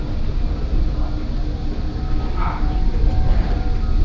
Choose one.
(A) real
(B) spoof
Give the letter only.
A